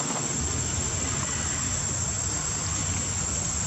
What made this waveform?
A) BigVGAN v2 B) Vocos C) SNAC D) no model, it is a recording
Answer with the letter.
D